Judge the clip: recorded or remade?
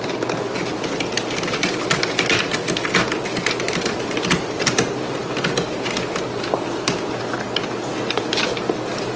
recorded